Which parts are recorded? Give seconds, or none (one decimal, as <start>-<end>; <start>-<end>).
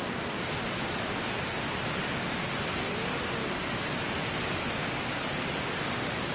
0.0-6.3